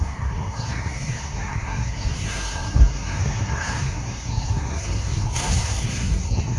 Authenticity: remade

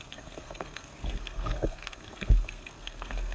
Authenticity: remade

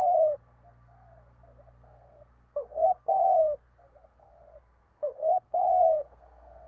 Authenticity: remade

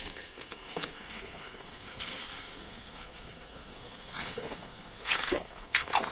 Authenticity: remade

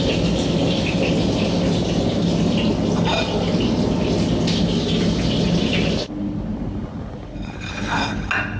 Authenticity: recorded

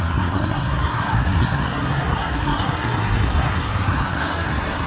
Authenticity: remade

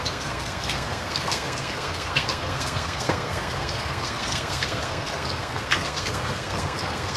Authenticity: remade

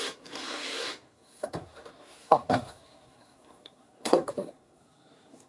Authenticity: remade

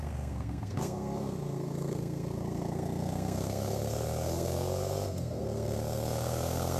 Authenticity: remade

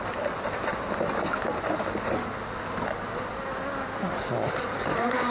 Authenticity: recorded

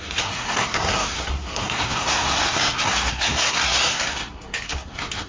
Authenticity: remade